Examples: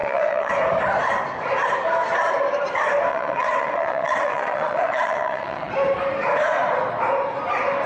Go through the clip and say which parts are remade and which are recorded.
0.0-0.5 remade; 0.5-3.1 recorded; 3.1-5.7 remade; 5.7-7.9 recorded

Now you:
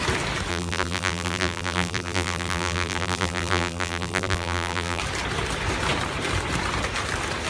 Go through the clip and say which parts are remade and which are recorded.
0.0-0.5 recorded; 0.5-5.0 remade; 5.0-7.5 recorded